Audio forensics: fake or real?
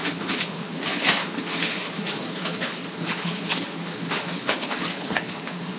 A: fake